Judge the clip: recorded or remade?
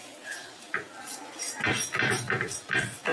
remade